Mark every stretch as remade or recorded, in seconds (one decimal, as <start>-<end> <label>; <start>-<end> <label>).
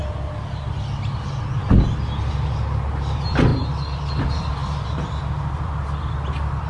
0.0-2.3 recorded; 2.3-3.5 remade; 3.5-4.1 recorded; 4.1-6.7 remade